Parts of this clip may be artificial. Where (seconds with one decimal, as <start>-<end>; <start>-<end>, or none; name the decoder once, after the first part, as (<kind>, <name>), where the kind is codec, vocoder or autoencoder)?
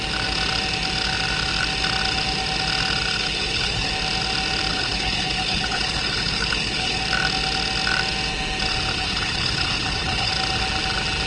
3.1-3.9 (codec, HILCodec); 4.7-7.0; 8.9-10.3